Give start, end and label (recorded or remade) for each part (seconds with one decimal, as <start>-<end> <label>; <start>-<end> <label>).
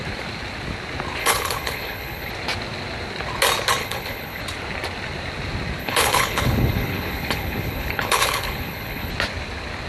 0.0-1.2 recorded; 1.2-2.3 remade; 2.3-3.8 recorded; 3.8-4.4 remade; 4.4-5.8 recorded; 5.8-9.1 remade; 9.1-9.9 recorded